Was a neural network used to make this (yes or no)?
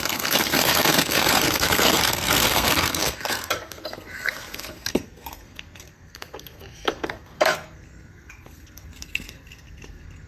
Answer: yes